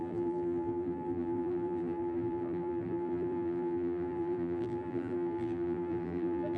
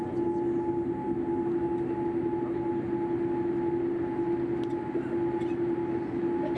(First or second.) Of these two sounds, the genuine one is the second